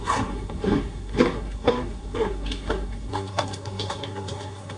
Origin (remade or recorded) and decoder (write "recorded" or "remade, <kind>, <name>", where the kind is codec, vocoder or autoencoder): remade, codec, SNAC